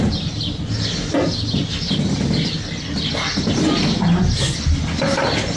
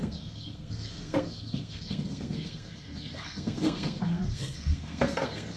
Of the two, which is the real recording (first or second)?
first